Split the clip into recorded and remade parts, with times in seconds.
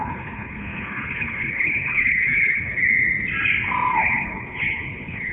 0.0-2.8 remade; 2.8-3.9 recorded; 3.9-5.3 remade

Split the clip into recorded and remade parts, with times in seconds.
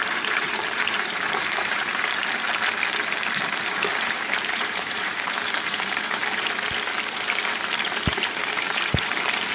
0.0-2.2 remade; 2.2-3.6 recorded; 3.6-6.2 remade; 6.2-7.5 recorded; 7.5-9.5 remade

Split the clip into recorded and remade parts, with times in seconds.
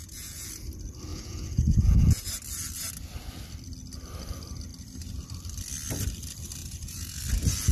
0.0-0.5 remade; 0.5-1.1 recorded; 1.1-2.3 remade; 2.3-6.6 recorded; 6.6-7.2 remade; 7.2-7.7 recorded